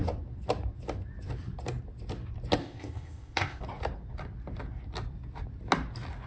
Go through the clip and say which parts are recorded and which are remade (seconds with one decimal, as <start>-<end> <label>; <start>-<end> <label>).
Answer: 0.0-2.6 recorded; 2.6-3.6 remade; 3.6-6.3 recorded